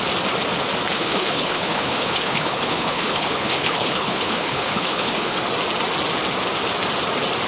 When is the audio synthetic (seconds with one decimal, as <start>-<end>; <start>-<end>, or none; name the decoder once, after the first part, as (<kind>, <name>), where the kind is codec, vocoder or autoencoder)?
0.9-5.4 (codec, HILCodec)